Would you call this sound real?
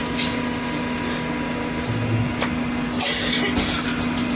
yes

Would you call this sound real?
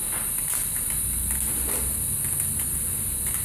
yes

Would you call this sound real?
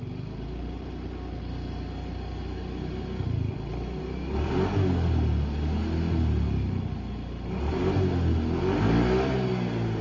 yes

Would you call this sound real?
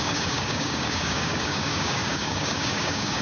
no